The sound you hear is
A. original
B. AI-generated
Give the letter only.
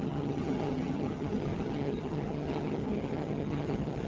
B